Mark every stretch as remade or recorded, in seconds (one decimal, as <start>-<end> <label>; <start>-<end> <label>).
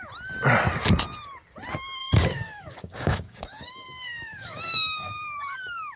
0.0-2.0 recorded; 2.0-5.6 remade; 5.6-6.0 recorded